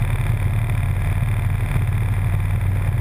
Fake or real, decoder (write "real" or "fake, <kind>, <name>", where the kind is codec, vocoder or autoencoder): real